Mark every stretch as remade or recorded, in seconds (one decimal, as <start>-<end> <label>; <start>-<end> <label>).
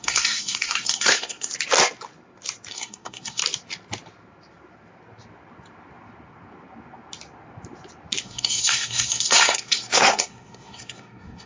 0.0-1.5 remade; 1.5-2.7 recorded; 2.7-3.4 remade; 3.4-8.2 recorded; 8.2-11.5 remade